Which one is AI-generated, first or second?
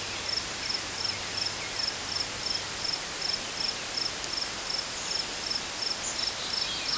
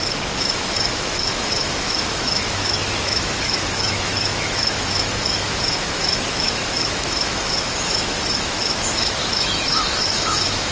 second